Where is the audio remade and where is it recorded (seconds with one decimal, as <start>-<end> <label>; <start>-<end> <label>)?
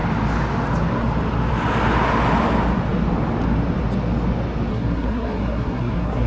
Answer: 0.0-4.7 recorded; 4.7-6.3 remade